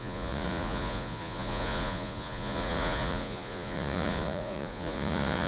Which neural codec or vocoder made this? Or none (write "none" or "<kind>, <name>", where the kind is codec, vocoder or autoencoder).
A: vocoder, Vocos